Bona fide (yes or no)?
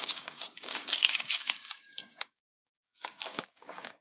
no